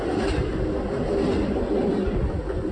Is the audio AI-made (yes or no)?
no